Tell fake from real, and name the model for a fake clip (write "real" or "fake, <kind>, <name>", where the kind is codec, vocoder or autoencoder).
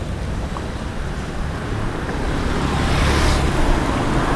fake, vocoder, BigVGAN v2